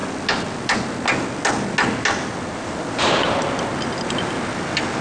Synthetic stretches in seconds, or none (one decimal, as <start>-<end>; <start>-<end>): none